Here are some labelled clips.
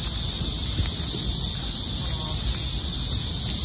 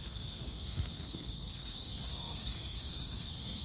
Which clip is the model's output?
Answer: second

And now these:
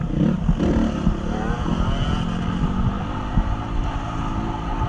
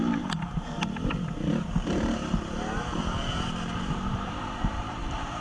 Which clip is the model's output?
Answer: second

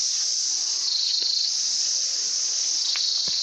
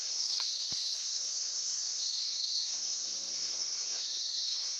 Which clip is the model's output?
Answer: second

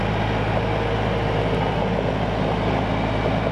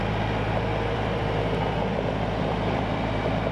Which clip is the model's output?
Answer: second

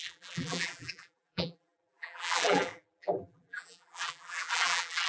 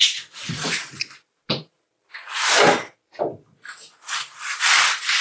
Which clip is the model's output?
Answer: first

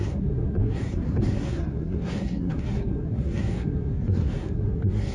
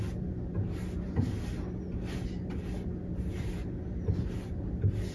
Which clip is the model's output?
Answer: first